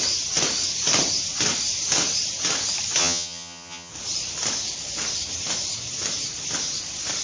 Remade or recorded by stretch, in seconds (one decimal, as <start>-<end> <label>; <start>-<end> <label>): 0.0-3.0 recorded; 3.0-3.9 remade; 3.9-7.2 recorded